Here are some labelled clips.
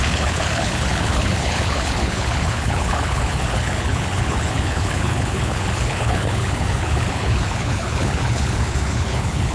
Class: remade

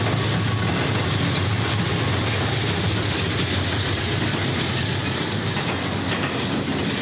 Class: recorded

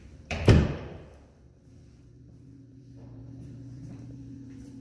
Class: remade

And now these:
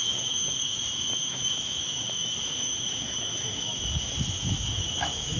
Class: remade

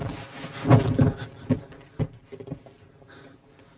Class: recorded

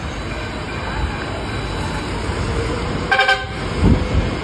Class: recorded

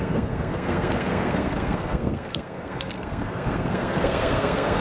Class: remade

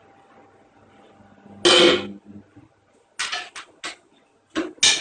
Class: recorded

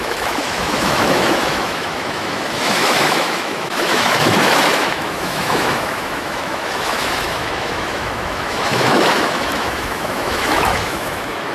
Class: remade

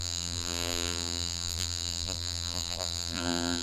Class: remade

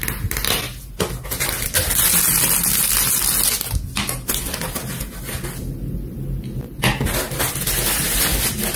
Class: recorded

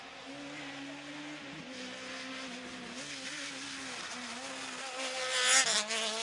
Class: recorded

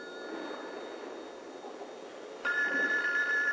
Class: recorded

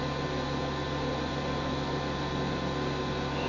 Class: recorded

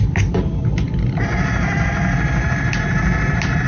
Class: recorded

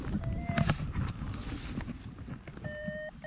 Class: recorded